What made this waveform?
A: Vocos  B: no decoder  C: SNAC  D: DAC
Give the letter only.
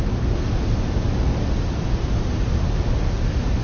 B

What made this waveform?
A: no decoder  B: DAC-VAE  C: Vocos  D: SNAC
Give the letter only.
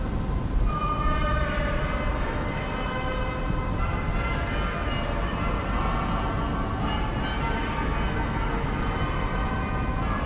A